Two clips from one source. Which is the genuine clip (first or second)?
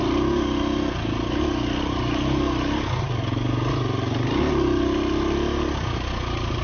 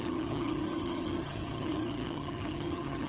first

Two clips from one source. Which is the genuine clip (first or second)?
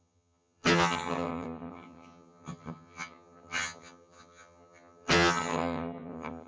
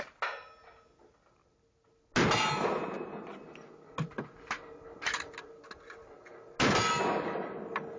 second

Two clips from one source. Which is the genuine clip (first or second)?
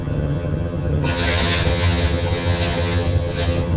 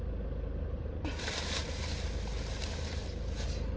second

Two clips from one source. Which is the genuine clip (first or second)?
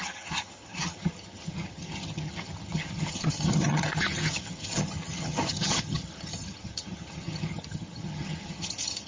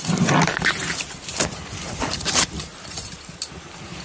second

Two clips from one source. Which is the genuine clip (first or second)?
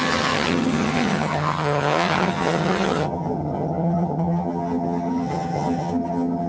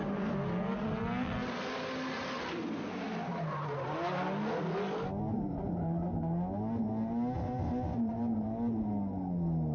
second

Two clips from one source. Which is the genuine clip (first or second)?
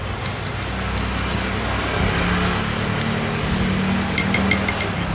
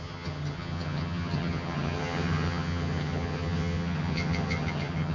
first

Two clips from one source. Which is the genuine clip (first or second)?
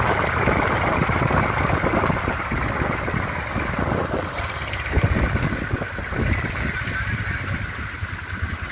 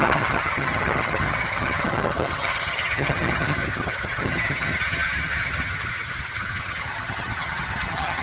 first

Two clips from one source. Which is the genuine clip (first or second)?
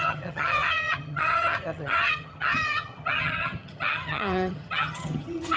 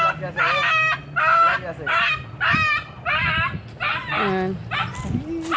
second